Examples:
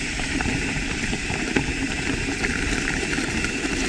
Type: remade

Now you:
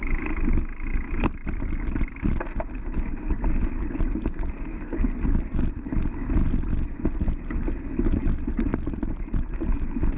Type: recorded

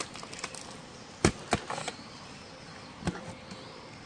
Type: recorded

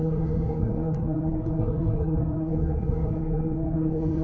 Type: remade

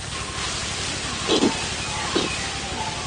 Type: recorded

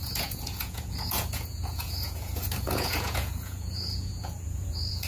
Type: remade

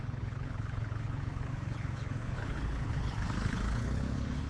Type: remade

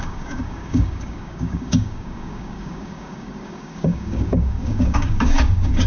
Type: remade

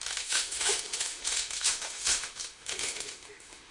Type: remade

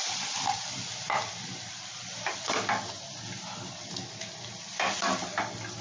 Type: recorded